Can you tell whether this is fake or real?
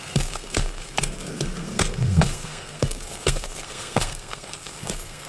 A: fake